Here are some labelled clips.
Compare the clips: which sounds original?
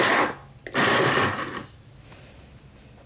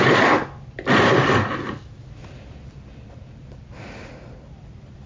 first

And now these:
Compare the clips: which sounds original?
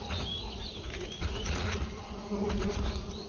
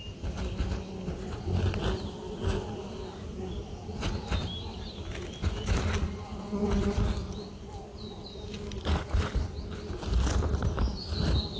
second